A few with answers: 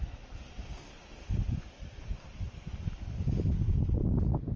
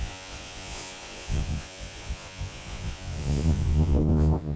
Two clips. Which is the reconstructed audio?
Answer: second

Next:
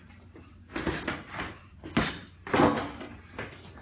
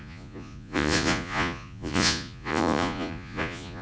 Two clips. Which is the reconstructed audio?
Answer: second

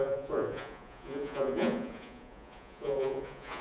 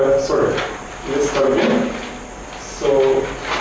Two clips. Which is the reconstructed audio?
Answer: first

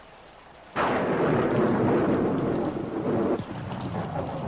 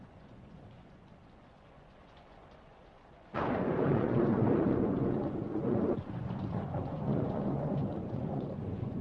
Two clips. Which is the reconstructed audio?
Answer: second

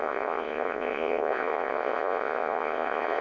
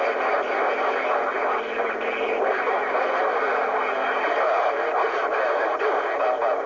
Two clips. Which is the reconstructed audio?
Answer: first